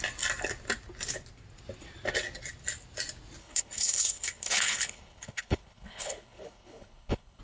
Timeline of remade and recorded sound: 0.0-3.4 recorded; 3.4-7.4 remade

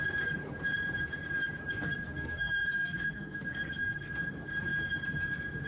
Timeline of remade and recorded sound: 0.0-1.7 recorded; 1.7-4.1 remade; 4.1-5.7 recorded